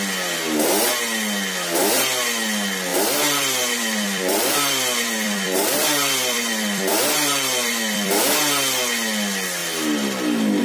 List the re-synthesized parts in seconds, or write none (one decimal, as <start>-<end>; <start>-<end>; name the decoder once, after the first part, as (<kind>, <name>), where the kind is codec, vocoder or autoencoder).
2.9-8.1 (vocoder, BigVGAN v2)